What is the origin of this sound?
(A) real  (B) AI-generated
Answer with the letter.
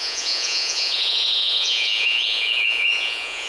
B